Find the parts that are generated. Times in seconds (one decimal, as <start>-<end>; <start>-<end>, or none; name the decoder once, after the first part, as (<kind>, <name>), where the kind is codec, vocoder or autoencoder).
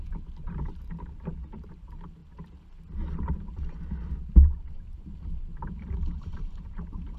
0.0-7.2 (vocoder, BigVGAN v2)